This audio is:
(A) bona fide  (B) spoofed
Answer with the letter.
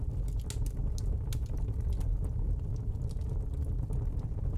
A